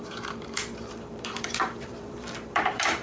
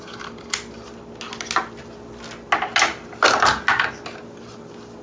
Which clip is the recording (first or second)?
second